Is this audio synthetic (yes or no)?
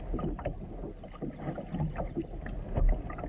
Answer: no